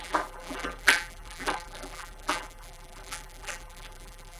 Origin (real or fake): fake